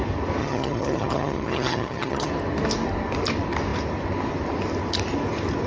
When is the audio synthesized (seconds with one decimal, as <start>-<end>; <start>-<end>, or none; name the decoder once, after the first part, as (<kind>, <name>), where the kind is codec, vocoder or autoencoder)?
0.4-2.3 (vocoder, HiFi-GAN)